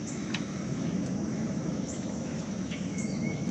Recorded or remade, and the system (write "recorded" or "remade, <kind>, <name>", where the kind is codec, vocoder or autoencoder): remade, autoencoder, DAC-VAE